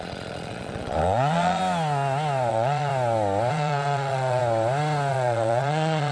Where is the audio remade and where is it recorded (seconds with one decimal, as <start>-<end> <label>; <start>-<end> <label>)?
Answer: 0.0-1.6 remade; 1.6-2.5 recorded; 2.5-2.9 remade; 2.9-3.5 recorded; 3.5-4.4 remade; 4.4-5.1 recorded; 5.1-6.1 remade